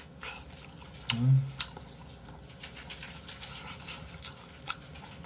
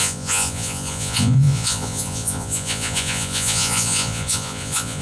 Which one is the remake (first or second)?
second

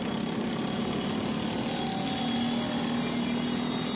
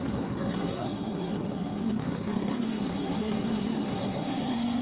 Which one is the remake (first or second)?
second